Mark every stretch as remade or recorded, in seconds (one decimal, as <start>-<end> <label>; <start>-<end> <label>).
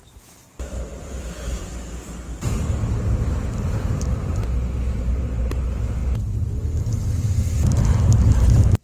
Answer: 0.0-1.7 remade; 1.7-3.7 recorded; 3.7-8.8 remade